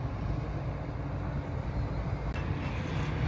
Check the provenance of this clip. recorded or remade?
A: recorded